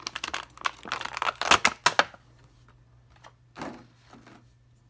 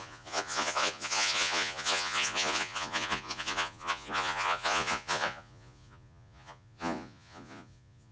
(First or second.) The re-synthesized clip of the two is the second